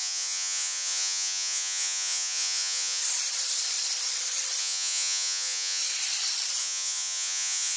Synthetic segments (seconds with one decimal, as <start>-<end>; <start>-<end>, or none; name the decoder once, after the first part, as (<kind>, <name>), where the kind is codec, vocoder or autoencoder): 0.0-3.0 (vocoder, Vocos); 4.6-5.8; 6.6-7.8